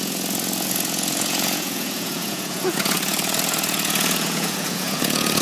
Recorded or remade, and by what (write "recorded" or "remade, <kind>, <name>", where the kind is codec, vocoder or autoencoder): remade, vocoder, Vocos